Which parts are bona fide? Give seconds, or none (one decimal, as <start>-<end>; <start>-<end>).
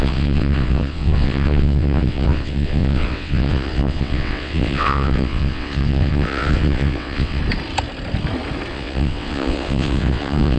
7.4-8.7